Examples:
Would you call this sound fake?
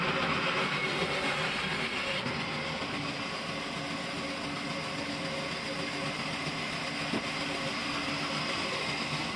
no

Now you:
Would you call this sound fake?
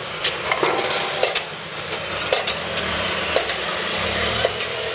no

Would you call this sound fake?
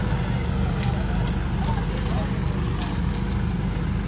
no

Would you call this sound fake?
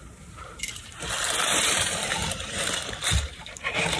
yes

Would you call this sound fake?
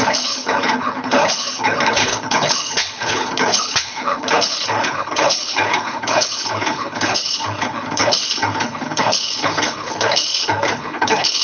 yes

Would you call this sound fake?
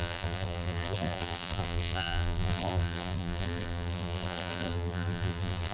yes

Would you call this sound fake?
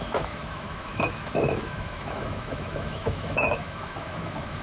yes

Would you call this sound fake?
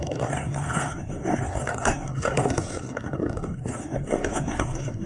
yes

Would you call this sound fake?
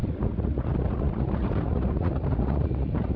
yes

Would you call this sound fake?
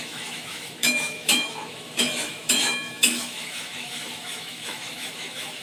yes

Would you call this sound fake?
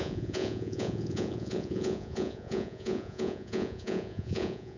yes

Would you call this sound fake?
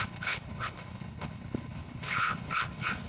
yes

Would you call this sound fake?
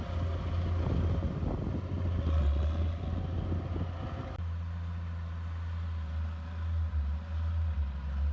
no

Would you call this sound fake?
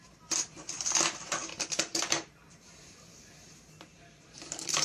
yes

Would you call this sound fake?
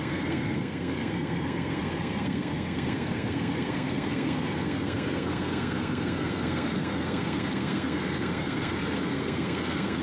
yes